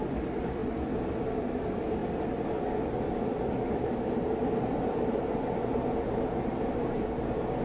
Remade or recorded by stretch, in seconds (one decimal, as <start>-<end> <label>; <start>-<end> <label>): 0.0-0.6 remade; 0.6-1.4 recorded; 1.4-2.0 remade; 2.0-3.6 recorded; 3.6-7.6 remade